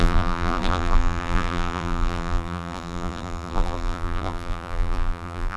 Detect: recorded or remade remade